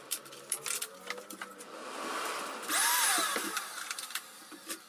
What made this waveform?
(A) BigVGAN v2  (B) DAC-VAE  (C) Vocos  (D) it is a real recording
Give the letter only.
D